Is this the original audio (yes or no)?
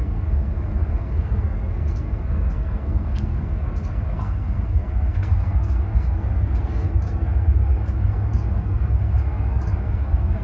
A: no